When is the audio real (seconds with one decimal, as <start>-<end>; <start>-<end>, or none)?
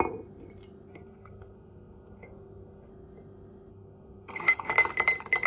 0.0-0.9; 2.9-3.7; 4.7-5.5